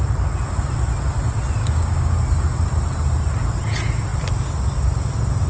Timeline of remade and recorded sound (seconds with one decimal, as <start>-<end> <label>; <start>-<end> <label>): 0.0-1.6 recorded; 1.6-2.2 remade; 2.2-5.5 recorded